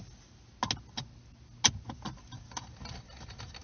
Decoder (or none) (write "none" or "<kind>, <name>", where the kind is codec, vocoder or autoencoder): none